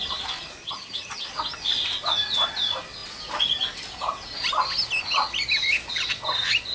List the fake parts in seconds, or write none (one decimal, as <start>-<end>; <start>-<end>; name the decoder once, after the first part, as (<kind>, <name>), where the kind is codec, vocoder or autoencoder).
0.6-1.3 (vocoder, HiFi-GAN)